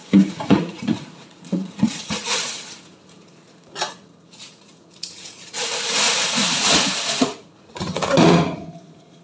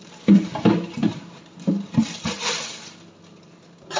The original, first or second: second